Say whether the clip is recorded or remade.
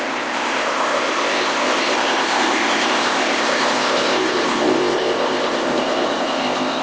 remade